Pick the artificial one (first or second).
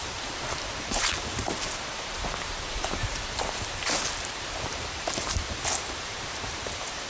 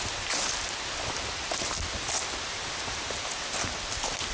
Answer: first